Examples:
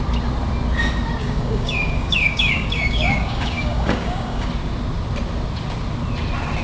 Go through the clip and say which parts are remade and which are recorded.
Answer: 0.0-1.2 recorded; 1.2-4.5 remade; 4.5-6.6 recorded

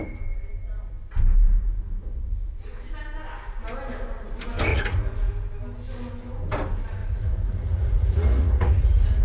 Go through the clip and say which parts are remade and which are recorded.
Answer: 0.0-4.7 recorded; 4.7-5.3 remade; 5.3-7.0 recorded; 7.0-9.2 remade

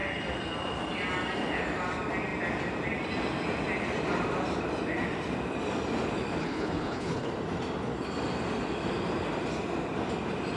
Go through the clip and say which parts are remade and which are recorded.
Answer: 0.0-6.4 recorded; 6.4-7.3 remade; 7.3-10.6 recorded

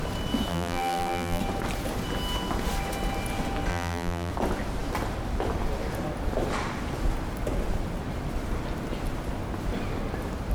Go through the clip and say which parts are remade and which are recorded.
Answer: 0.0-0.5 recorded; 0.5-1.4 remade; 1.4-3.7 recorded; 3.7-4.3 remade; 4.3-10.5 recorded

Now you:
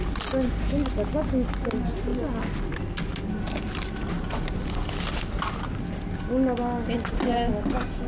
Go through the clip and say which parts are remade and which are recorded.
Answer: 0.0-8.1 recorded

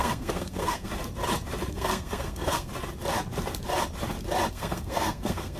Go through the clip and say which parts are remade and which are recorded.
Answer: 0.0-0.9 remade; 0.9-1.7 recorded; 1.7-2.7 remade; 2.7-4.5 recorded; 4.5-5.6 remade

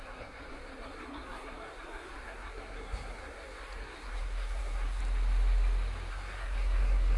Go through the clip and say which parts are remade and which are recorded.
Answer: 0.0-5.0 remade; 5.0-6.1 recorded; 6.1-7.2 remade